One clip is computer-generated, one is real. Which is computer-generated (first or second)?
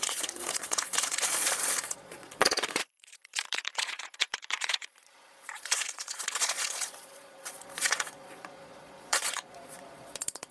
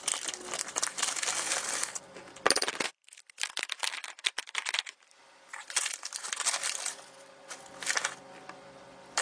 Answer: first